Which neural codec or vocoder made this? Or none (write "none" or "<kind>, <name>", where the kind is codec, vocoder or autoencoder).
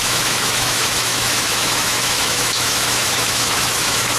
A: autoencoder, DAC-VAE